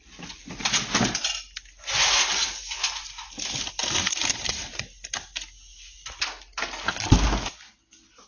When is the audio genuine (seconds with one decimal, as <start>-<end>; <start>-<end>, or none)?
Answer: 0.0-8.3